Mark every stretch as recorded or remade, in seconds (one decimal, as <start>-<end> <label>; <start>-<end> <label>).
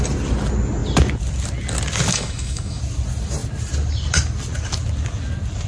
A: 0.0-2.1 recorded; 2.1-2.8 remade; 2.8-5.7 recorded